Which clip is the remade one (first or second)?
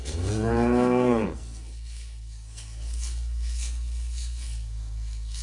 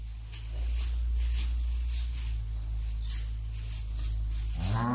first